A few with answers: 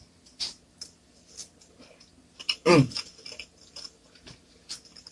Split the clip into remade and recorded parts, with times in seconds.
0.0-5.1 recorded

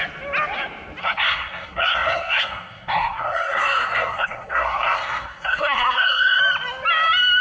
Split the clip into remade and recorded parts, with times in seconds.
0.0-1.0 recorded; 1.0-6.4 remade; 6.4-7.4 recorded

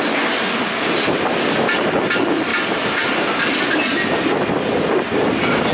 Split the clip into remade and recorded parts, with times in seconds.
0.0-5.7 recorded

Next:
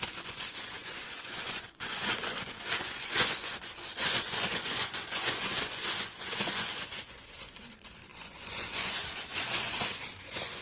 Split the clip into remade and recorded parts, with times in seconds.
0.0-10.6 remade

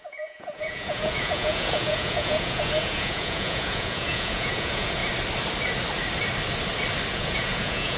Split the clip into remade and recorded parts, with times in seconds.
0.0-5.0 remade; 5.0-7.1 recorded; 7.1-8.0 remade

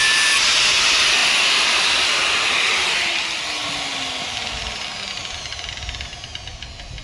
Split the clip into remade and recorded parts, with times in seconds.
0.0-7.0 recorded